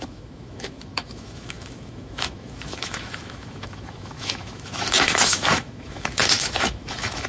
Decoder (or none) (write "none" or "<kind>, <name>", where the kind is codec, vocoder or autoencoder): autoencoder, DAC-VAE